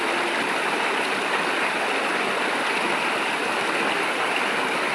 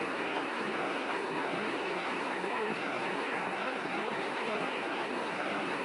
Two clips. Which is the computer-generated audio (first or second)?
second